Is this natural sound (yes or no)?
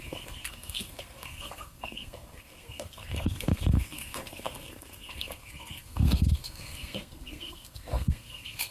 no